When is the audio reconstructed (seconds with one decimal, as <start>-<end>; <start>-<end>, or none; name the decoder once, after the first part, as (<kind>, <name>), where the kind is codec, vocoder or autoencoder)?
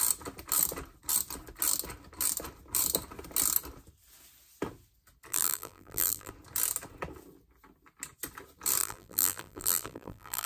5.3-6.3 (vocoder, BigVGAN v2); 8.8-10.5